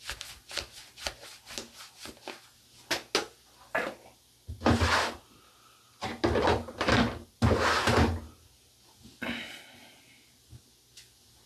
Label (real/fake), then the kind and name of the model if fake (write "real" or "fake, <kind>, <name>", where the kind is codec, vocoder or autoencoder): real